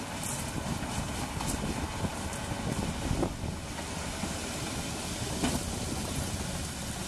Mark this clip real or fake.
real